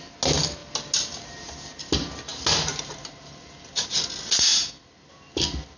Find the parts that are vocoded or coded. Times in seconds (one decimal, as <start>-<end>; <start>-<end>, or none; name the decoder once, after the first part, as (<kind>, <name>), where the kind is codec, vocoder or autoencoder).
none